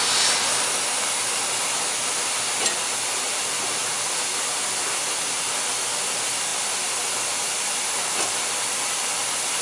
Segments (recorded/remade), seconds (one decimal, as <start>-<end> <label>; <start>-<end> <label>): 0.0-9.6 recorded